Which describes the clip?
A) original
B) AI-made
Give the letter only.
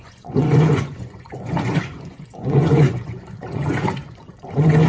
B